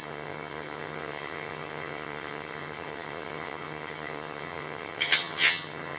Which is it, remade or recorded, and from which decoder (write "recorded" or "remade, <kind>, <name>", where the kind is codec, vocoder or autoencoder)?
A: remade, vocoder, HiFi-GAN